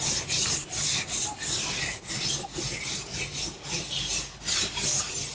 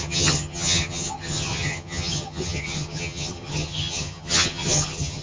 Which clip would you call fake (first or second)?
second